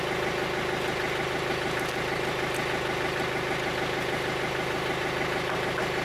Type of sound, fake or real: real